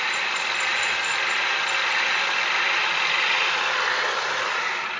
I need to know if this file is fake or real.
real